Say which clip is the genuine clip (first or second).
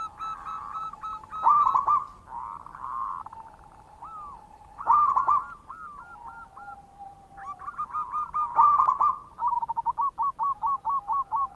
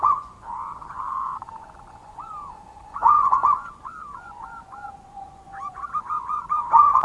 first